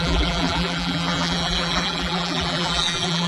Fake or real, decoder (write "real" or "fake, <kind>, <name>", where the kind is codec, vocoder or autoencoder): fake, vocoder, BigVGAN v2